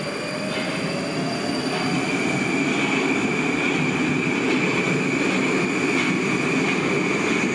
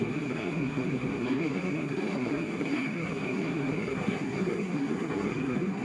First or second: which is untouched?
first